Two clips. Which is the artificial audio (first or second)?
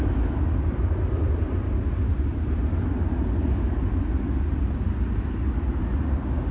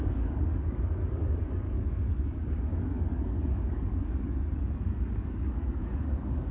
second